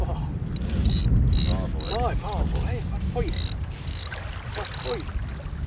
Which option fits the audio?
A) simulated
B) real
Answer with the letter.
B